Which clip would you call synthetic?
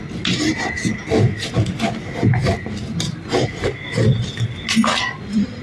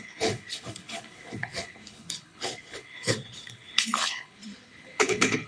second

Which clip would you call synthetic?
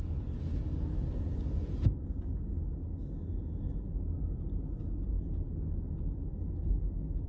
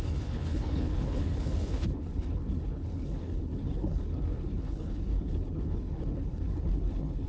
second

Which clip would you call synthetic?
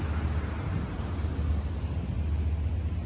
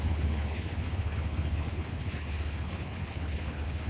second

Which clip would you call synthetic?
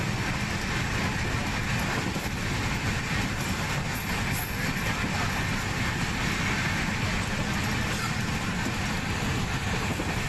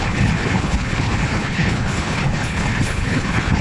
second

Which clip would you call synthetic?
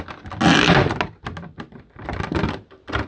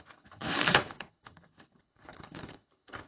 second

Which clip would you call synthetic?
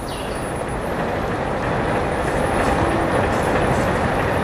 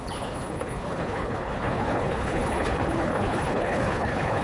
second